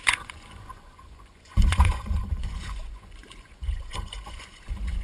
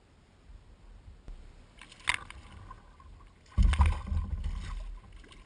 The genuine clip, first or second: second